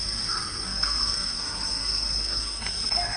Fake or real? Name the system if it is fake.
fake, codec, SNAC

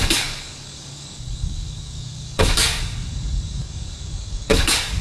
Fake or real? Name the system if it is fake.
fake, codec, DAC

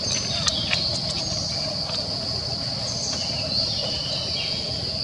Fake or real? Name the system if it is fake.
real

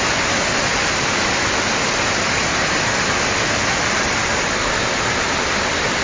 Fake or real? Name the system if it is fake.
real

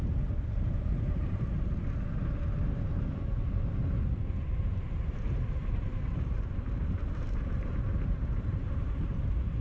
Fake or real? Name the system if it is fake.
fake, vocoder, BigVGAN v2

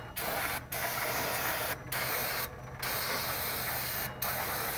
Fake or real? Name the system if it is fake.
real